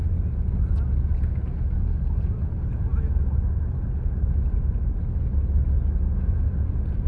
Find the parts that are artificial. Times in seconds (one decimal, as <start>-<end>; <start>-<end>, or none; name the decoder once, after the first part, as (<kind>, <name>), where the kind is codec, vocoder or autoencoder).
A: none